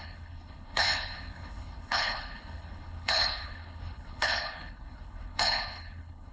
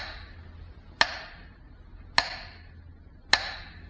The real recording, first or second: second